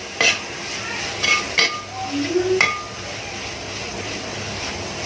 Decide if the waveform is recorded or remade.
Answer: recorded